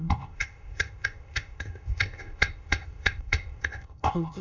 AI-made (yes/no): yes